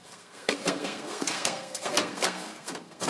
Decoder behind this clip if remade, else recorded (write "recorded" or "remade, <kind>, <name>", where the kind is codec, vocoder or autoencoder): remade, codec, SNAC